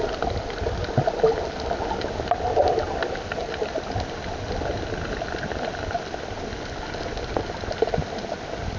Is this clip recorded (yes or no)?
yes